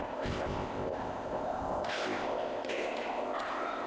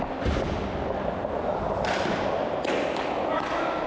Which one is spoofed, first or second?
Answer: first